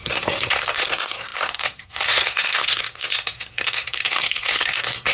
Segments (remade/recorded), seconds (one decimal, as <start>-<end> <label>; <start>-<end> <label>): 0.0-5.1 remade